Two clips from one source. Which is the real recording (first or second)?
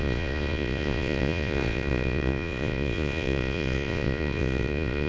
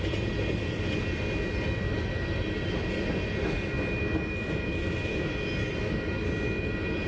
second